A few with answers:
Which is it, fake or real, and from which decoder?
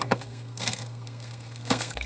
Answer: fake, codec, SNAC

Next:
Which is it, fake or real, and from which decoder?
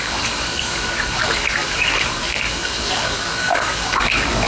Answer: fake, codec, DAC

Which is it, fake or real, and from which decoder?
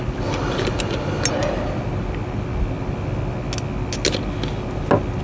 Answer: real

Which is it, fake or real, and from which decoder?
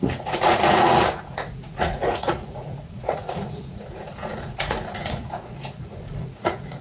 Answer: fake, vocoder, Vocos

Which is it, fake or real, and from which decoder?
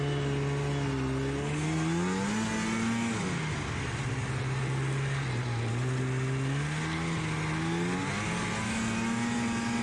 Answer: real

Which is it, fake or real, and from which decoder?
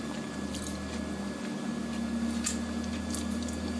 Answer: real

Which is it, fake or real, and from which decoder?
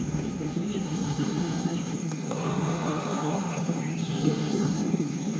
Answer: fake, codec, SNAC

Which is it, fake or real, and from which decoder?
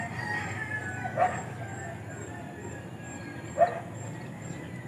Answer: real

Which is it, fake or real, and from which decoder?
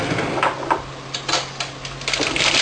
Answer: real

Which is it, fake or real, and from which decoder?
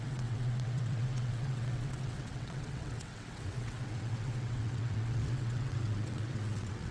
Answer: fake, vocoder, WaveNeXt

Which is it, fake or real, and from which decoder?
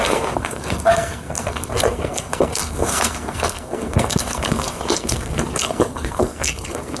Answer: fake, codec, SNAC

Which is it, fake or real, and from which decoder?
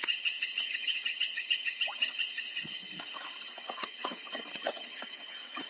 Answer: fake, vocoder, HiFi-GAN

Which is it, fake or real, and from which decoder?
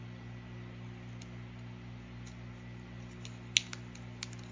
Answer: real